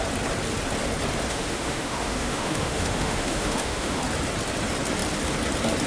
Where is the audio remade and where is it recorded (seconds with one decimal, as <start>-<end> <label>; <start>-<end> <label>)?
0.0-1.3 recorded; 1.3-4.0 remade; 4.0-5.9 recorded